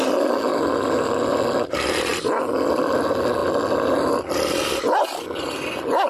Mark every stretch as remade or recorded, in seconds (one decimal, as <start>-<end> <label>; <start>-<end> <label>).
0.0-6.1 recorded